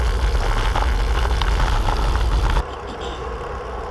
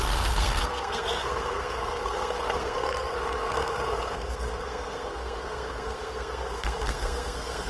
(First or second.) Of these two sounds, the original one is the first